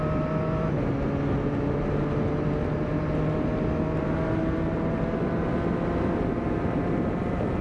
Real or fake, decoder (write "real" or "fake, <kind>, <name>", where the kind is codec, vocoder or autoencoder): real